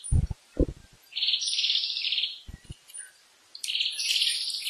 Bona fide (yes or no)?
no